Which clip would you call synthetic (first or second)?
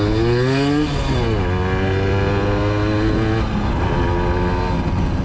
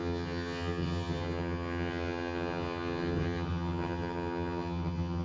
second